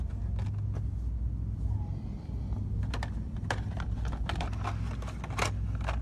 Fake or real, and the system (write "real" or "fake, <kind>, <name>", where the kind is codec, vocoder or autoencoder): real